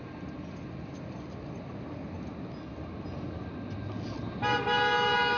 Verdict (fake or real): real